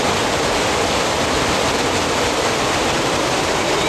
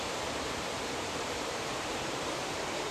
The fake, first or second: second